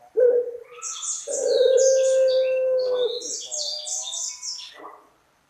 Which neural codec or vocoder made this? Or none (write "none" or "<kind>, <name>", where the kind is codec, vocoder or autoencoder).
none